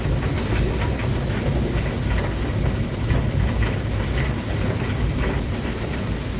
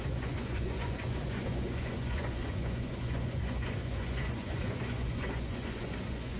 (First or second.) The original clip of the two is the first